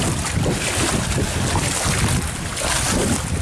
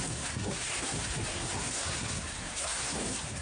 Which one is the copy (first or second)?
second